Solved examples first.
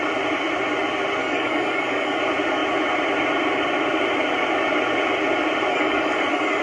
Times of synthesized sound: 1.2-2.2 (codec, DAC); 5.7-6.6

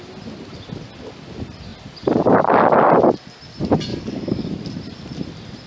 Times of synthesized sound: 3.9-4.5 (codec, DAC)